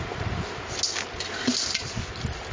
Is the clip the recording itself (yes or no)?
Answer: yes